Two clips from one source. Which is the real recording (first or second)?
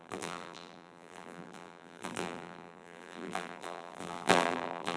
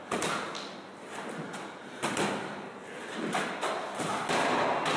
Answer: second